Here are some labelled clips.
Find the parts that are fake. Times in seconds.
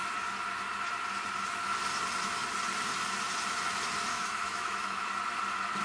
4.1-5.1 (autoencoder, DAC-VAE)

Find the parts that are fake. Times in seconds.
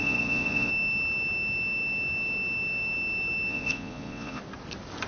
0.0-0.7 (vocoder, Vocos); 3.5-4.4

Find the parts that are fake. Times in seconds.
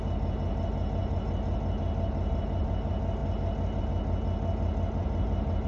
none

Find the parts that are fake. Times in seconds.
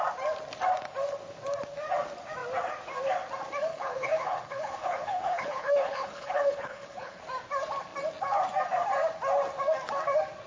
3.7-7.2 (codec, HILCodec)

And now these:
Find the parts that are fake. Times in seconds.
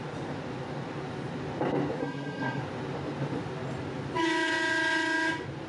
2.0-2.6 (codec, SNAC)